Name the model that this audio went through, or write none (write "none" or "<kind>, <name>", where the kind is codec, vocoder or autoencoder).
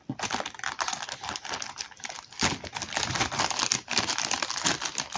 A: none